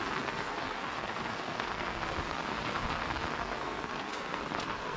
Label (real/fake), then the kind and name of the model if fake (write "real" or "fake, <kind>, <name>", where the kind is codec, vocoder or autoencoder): fake, codec, SNAC